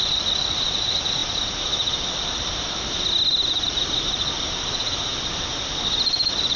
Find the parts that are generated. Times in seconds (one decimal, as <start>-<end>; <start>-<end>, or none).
none

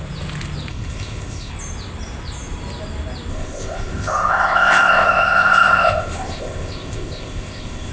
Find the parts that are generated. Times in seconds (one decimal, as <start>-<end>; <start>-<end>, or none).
0.7-1.5; 3.3-7.9

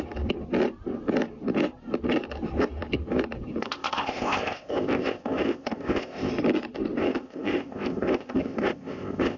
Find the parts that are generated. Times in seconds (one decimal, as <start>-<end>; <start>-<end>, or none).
3.6-6.3; 7.0-9.4